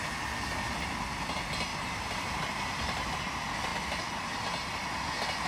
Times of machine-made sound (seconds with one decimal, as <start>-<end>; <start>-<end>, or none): 1.7-3.2